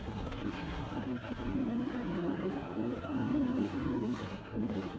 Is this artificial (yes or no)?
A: yes